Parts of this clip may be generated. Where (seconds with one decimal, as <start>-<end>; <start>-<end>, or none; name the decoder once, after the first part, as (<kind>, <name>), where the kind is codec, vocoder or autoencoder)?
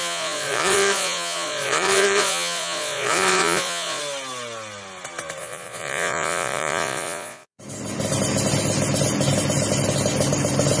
0.0-4.0 (vocoder, Vocos); 5.4-7.6